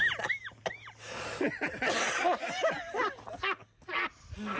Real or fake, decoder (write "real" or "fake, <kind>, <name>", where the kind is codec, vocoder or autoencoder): real